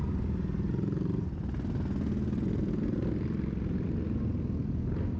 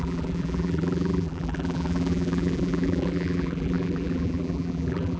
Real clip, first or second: first